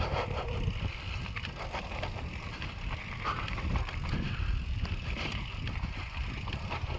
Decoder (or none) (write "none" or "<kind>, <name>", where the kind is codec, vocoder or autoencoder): vocoder, BigVGAN v2